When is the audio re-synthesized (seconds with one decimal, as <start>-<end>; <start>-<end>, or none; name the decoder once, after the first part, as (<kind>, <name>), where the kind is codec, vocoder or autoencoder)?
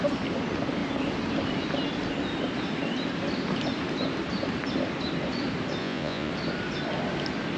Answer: 5.8-6.3 (vocoder, Vocos)